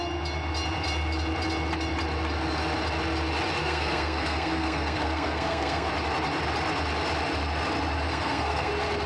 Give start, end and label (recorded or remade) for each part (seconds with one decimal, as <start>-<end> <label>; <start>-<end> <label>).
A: 0.0-3.6 recorded; 3.6-5.9 remade; 5.9-8.1 recorded; 8.1-8.7 remade; 8.7-9.1 recorded